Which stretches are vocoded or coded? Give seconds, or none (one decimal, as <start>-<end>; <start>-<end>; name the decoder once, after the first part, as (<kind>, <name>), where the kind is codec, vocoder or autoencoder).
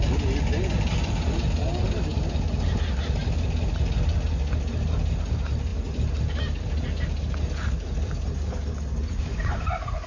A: none